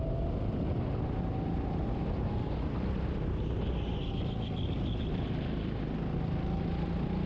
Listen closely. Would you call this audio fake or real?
real